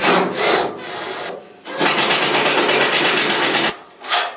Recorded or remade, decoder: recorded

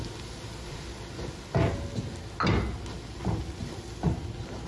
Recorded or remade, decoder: recorded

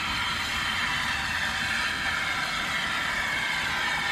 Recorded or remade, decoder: recorded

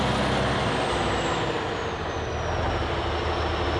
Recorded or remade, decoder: recorded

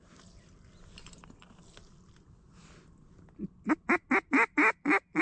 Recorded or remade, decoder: recorded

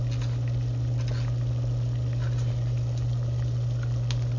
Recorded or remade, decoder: recorded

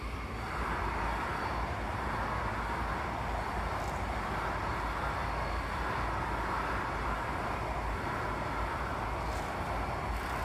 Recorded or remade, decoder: recorded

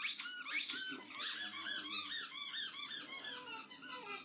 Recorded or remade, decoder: recorded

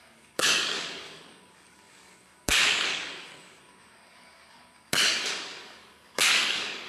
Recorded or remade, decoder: remade, codec, DAC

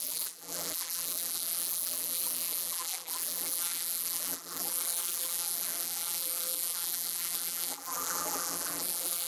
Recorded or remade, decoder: remade, vocoder, BigVGAN v2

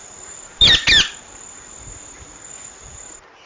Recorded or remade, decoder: recorded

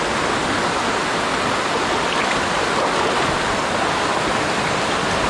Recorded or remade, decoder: recorded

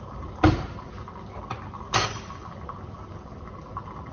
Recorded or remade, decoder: recorded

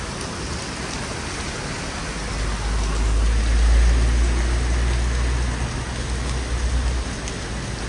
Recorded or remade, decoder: recorded